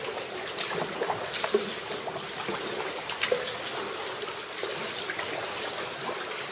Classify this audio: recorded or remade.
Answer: recorded